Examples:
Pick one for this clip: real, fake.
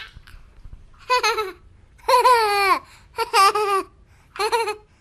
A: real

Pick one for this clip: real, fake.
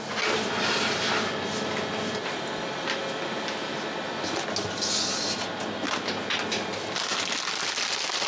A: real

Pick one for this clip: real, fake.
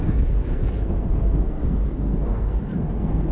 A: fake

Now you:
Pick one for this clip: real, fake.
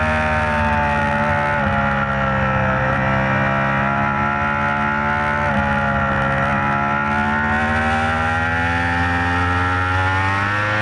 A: real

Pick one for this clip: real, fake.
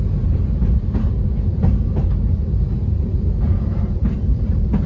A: fake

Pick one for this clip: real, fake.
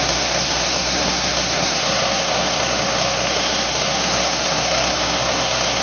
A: fake